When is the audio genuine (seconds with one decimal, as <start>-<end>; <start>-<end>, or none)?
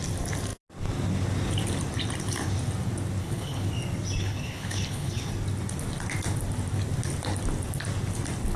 0.0-3.2; 3.7-4.2; 5.3-8.6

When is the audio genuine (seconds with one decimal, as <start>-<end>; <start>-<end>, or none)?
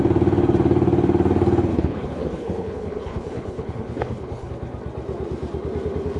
0.0-1.7; 4.5-6.2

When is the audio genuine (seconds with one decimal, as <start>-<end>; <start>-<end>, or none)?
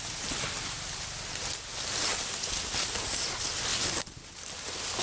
0.0-5.0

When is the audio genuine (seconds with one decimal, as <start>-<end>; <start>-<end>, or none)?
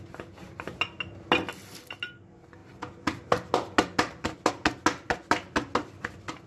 0.0-6.5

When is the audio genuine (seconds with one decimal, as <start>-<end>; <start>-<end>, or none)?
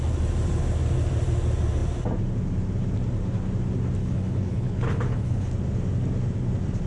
0.0-4.0; 5.5-6.9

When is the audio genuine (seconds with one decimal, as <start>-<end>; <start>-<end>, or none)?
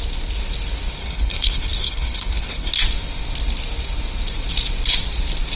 0.0-1.0; 2.7-5.6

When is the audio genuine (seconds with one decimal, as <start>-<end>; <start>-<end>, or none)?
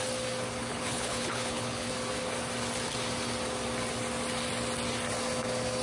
0.0-0.6; 1.9-5.8